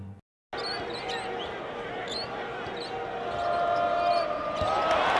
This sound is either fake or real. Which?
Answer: real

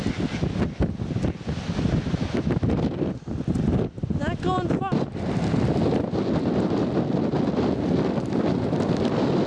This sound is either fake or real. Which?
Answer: real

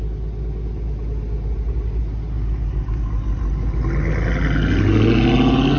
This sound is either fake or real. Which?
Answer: real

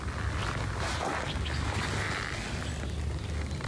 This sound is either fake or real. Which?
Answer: real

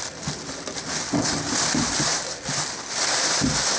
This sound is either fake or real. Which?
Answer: real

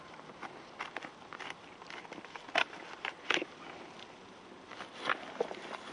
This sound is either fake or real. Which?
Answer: real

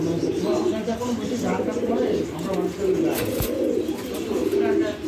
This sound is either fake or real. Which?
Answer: real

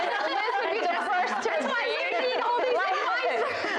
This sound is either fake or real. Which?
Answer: real